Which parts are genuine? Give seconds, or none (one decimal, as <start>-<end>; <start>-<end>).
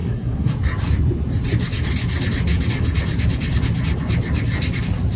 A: 0.5-5.2